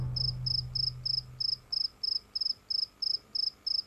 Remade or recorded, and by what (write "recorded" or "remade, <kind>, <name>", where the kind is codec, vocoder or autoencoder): recorded